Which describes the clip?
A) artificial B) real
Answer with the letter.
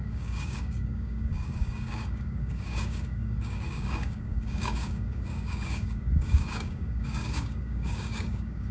A